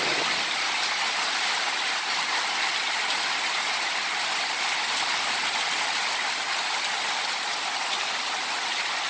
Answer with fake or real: real